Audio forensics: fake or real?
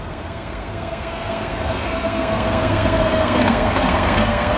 fake